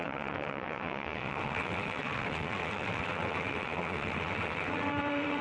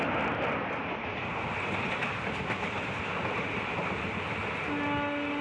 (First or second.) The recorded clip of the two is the second